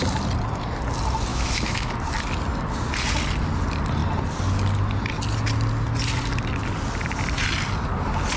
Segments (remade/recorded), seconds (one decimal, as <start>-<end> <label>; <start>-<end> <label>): 0.0-1.3 recorded; 1.3-1.9 remade; 1.9-8.4 recorded